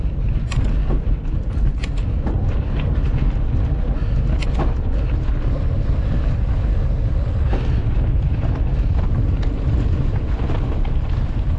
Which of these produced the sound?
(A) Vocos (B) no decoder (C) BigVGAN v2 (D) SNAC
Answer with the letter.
B